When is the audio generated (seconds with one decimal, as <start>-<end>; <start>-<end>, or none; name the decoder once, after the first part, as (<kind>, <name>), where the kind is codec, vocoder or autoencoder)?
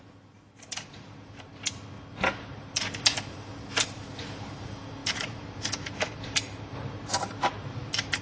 0.0-1.5 (vocoder, BigVGAN v2); 2.1-8.2